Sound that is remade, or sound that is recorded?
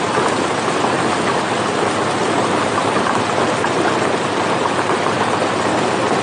recorded